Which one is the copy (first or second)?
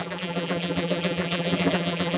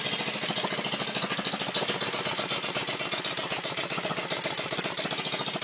first